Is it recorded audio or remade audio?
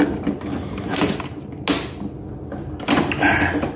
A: recorded